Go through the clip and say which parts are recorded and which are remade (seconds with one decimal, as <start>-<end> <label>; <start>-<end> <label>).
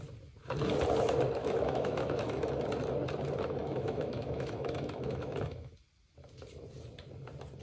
0.0-1.4 recorded; 1.4-2.5 remade; 2.5-3.6 recorded; 3.6-5.7 remade; 5.7-7.6 recorded